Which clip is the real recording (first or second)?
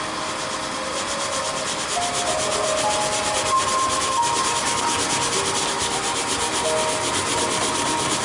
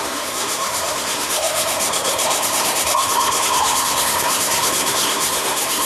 first